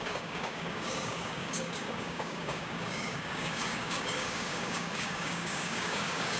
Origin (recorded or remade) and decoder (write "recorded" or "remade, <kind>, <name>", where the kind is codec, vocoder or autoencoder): remade, codec, DAC